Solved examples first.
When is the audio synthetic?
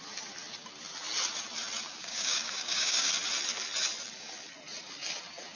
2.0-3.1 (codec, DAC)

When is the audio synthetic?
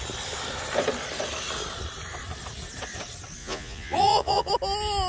3.4-4.5 (vocoder, Vocos)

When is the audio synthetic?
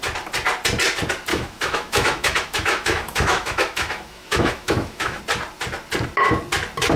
1.3-5.2 (autoencoder, DAC-VAE)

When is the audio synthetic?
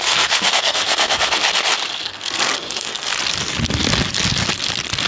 0.0-1.4 (codec, SNAC); 1.9-3.1